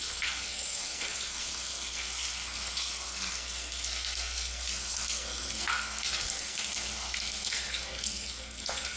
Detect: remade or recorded remade